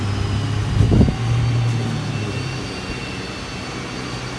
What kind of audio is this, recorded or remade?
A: recorded